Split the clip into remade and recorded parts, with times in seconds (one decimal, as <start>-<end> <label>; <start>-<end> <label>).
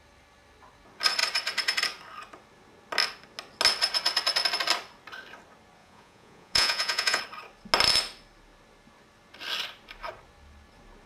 0.0-5.8 recorded; 5.8-7.2 remade; 7.2-11.1 recorded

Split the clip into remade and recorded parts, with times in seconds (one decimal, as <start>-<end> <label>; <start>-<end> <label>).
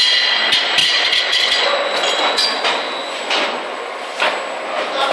0.0-0.8 recorded; 0.8-2.6 remade; 2.6-3.0 recorded; 3.0-3.9 remade; 3.9-5.1 recorded